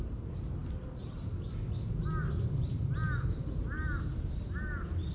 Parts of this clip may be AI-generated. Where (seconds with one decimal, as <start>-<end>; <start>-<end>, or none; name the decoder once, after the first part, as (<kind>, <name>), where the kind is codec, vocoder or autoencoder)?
none

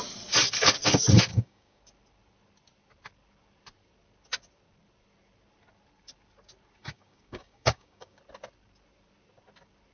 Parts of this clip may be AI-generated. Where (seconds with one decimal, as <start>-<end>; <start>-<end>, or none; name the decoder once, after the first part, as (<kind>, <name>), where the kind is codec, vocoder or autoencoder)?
1.3-1.8 (codec, DAC); 6.8-8.2

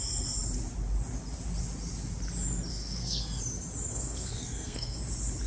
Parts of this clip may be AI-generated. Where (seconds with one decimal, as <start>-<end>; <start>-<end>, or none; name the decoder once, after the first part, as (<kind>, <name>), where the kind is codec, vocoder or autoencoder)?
2.7-3.4 (codec, SNAC); 3.9-5.0

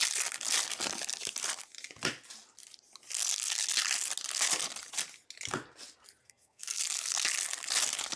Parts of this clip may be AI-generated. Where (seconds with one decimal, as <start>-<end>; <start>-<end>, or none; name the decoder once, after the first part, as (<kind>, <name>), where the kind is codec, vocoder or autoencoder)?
6.2-6.8 (codec, SNAC)

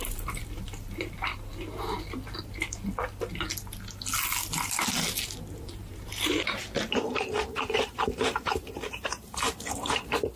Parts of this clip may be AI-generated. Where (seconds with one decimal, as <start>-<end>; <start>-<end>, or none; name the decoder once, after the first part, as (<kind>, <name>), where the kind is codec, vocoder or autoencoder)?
0.0-1.3 (vocoder, BigVGAN v2); 5.6-10.4

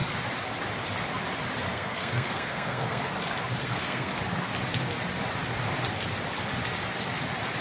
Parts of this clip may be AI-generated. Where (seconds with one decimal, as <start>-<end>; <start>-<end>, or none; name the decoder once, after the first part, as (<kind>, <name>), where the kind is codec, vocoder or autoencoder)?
1.7-3.0 (codec, SNAC); 3.6-4.2

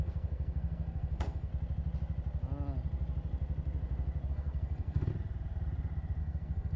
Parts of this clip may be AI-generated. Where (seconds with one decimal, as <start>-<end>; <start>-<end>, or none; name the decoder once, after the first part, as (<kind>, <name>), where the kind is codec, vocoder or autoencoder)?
0.0-1.5 (codec, SNAC); 4.3-5.1; 6.2-6.8

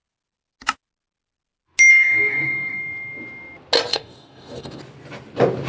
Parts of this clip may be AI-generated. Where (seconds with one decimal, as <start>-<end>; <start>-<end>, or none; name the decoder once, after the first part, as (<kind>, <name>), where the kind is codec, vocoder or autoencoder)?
1.9-2.8 (codec, DAC); 3.9-4.8